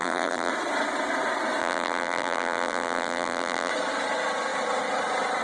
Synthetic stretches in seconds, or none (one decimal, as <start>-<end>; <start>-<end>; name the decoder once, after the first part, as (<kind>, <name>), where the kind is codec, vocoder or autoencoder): 0.0-0.5 (vocoder, BigVGAN v2); 1.6-3.7